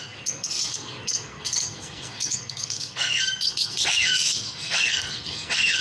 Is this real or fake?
fake